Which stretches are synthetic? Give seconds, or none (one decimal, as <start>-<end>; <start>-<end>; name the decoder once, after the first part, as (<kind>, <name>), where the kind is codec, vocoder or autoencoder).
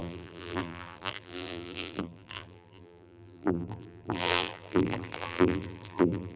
0.0-6.4 (vocoder, BigVGAN v2)